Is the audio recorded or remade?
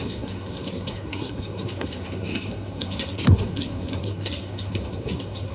remade